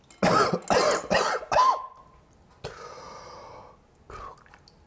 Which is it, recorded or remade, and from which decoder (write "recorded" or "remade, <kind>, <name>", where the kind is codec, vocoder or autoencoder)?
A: recorded